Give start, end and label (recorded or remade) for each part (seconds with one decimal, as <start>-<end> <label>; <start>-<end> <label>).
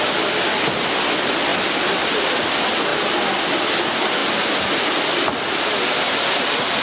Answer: 0.0-4.2 recorded; 4.2-6.8 remade